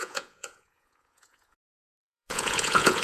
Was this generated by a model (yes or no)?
yes